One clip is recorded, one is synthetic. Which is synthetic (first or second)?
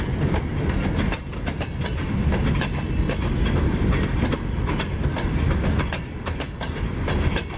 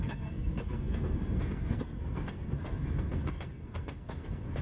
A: second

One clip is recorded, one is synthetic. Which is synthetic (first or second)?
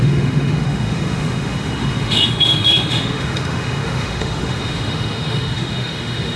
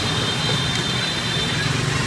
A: first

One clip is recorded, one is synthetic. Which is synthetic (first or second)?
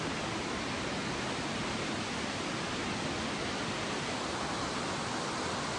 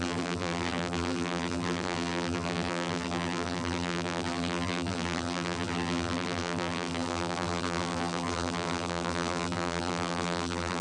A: second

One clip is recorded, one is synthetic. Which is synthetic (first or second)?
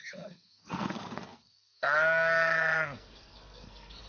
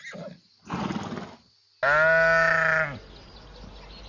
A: first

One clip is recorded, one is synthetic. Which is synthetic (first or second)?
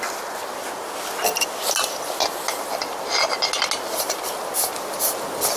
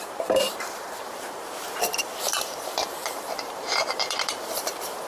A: second